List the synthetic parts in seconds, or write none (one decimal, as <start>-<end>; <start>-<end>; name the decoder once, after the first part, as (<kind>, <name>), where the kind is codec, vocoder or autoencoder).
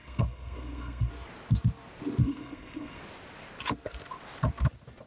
0.0-1.1 (codec, SNAC); 2.2-3.0